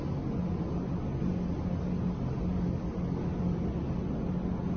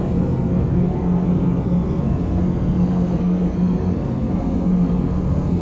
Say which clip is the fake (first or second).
second